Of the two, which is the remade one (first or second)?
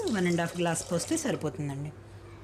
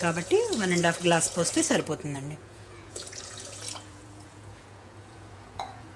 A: second